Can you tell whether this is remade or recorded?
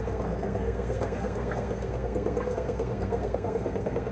remade